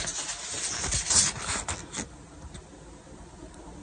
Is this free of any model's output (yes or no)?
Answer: yes